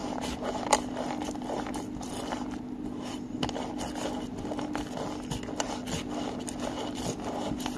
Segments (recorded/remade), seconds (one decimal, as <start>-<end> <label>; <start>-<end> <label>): 0.0-7.8 recorded